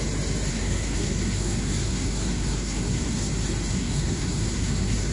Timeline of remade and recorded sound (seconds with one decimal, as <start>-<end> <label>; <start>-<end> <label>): 0.0-0.5 recorded; 0.5-3.3 remade; 3.3-3.7 recorded; 3.7-5.1 remade